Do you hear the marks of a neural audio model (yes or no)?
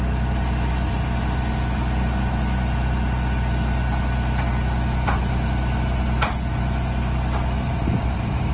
no